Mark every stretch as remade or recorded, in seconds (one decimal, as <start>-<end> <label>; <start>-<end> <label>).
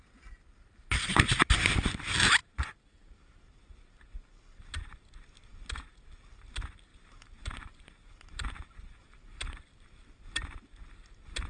0.0-2.4 recorded; 2.4-3.0 remade; 3.0-6.9 recorded; 6.9-10.0 remade; 10.0-11.5 recorded